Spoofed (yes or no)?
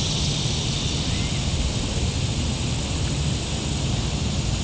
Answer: no